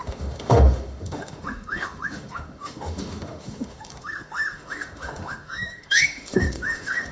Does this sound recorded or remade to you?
remade